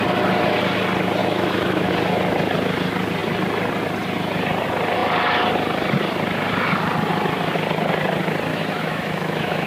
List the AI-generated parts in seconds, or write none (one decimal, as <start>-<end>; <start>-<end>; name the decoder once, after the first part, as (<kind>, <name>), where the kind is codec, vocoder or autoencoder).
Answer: 1.2-1.9 (autoencoder, DAC-VAE); 8.5-9.7